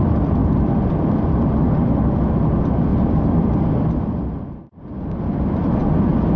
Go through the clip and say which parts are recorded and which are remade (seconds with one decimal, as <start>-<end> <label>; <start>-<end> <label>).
0.0-0.4 recorded; 0.4-0.9 remade; 0.9-2.9 recorded; 2.9-3.6 remade; 3.6-6.4 recorded